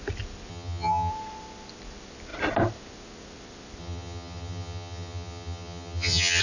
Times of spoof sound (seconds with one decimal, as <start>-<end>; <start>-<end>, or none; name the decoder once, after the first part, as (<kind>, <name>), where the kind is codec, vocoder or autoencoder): 0.5-1.1 (vocoder, HiFi-GAN); 3.8-6.4